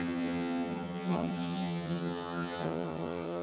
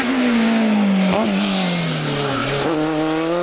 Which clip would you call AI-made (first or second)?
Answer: first